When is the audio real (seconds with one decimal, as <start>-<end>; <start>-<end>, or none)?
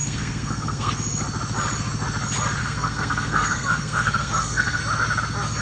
0.9-2.6; 4.8-5.6